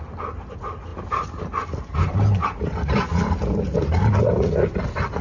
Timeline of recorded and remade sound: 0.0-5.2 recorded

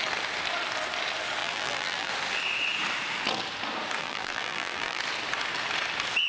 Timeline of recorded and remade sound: 0.0-1.4 recorded; 1.4-2.1 remade; 2.1-4.0 recorded; 4.0-5.0 remade; 5.0-6.3 recorded

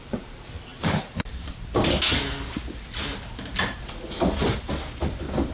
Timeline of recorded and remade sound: 0.0-0.7 recorded; 0.7-1.5 remade; 1.5-3.5 recorded; 3.5-4.7 remade; 4.7-5.5 recorded

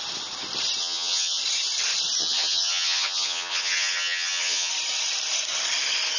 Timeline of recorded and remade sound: 0.0-0.8 recorded; 0.8-1.4 remade; 1.4-2.2 recorded; 2.2-4.7 remade; 4.7-6.2 recorded

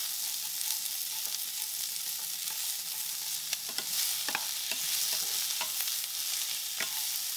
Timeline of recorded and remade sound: 0.0-7.4 recorded

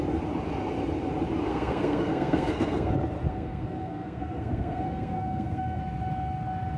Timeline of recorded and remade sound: 0.0-1.5 recorded; 1.5-2.9 remade; 2.9-3.3 recorded; 3.3-5.8 remade; 5.8-6.8 recorded

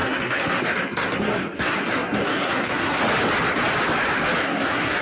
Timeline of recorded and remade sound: 0.0-3.0 remade; 3.0-4.4 recorded; 4.4-5.0 remade

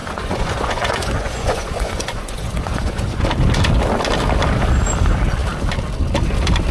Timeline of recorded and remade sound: 0.0-3.2 remade; 3.2-6.7 recorded